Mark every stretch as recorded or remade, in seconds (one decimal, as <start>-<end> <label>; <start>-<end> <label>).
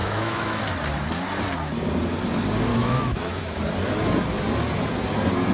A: 0.0-0.6 remade; 0.6-2.7 recorded; 2.7-3.6 remade; 3.6-5.5 recorded